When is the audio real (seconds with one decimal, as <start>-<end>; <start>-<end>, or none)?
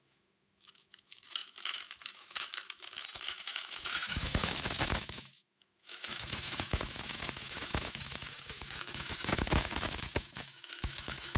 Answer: none